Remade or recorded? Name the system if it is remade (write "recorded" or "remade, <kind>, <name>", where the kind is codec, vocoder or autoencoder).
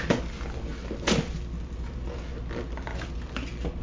recorded